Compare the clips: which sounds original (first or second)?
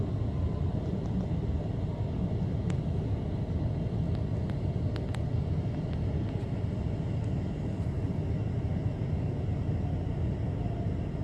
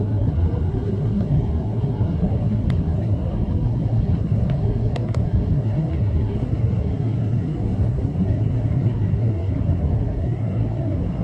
first